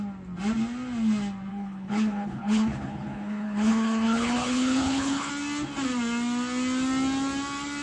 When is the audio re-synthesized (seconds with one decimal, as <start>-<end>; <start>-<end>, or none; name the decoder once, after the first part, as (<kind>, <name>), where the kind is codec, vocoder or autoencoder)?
1.5-5.3 (codec, HILCodec)